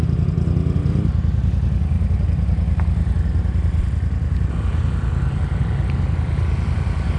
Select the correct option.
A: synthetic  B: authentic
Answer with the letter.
B